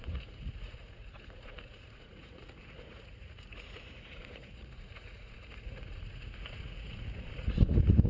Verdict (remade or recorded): remade